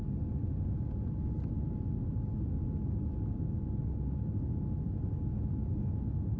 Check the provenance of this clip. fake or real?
real